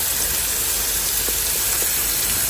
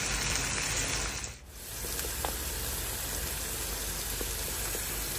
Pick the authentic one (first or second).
second